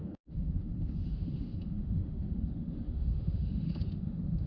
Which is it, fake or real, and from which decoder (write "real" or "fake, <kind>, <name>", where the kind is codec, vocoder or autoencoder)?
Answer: fake, autoencoder, DAC-VAE